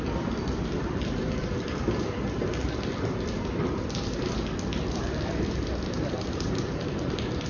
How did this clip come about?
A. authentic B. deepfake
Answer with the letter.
B